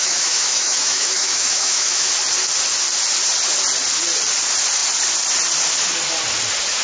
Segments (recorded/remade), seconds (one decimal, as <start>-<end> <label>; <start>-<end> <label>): 0.0-2.1 remade; 2.1-6.8 recorded